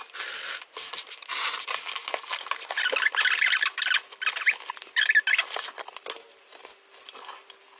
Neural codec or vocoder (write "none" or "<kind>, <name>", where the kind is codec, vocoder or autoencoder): none